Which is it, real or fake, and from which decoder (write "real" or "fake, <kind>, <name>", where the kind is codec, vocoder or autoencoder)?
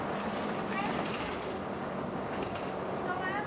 real